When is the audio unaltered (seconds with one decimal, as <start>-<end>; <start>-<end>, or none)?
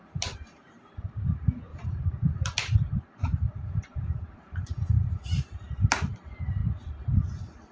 6.6-7.7